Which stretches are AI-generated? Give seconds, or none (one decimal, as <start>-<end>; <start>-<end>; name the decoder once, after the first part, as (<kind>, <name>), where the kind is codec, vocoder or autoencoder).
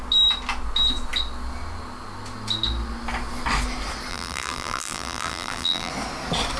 4.1-5.9 (vocoder, BigVGAN v2)